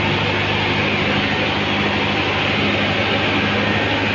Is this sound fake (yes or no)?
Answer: no